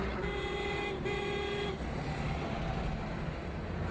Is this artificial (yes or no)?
no